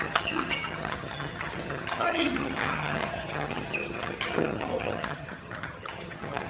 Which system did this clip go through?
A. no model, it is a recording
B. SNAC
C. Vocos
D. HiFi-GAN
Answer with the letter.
D